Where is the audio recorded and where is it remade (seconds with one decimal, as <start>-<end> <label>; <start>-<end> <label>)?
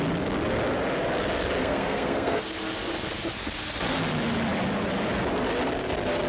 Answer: 0.0-1.6 recorded; 1.6-2.4 remade; 2.4-6.3 recorded